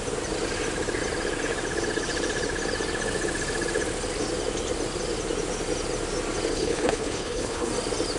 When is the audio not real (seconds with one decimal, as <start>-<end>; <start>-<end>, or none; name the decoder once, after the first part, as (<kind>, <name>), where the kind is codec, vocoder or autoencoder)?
6.5-7.7 (codec, HILCodec)